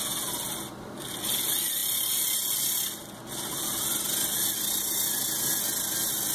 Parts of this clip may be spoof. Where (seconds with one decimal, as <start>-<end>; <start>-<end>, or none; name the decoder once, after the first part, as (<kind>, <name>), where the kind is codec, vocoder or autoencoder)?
none